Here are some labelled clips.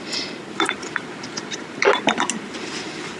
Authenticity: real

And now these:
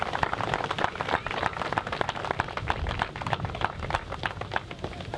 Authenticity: real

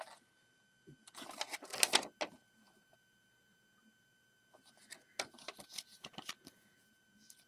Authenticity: real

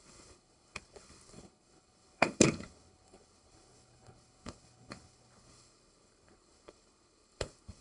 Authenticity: fake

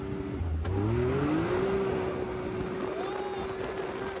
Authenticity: real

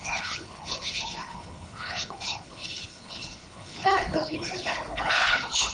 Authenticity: fake